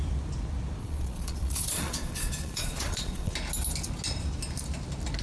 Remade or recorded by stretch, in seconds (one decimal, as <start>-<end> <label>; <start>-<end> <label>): 0.0-0.8 recorded; 0.8-3.3 remade; 3.3-5.2 recorded